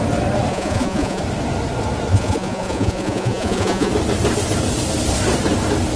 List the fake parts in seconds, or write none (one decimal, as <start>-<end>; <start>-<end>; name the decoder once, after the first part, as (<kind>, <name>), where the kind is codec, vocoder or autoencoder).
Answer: 0.5-1.2 (vocoder, Vocos); 2.1-3.9

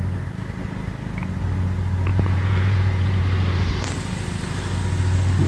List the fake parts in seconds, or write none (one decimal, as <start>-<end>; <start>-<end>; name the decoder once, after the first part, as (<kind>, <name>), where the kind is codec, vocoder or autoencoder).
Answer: 2.1-3.2 (vocoder, Vocos)